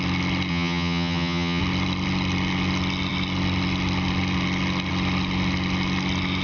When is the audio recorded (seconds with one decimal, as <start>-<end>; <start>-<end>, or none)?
0.0-0.5; 1.6-6.4